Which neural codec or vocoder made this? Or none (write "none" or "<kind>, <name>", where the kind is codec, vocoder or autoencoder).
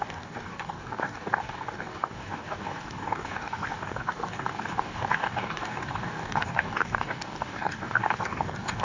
codec, DAC